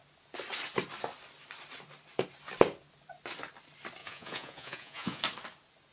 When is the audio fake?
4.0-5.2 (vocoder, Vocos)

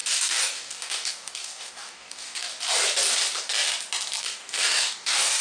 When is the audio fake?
0.0-2.5 (codec, DAC); 4.2-5.4

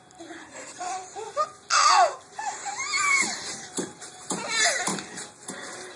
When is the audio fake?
0.0-1.0 (vocoder, BigVGAN v2); 2.3-2.7; 4.0-4.9; 5.5-6.0